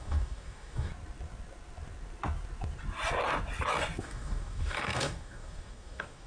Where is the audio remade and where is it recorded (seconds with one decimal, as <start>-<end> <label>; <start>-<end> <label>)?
0.0-0.9 remade; 0.9-4.0 recorded; 4.0-6.3 remade